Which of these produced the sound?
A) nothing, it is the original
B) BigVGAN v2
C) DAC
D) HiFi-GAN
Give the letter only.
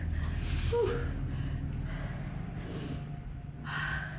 A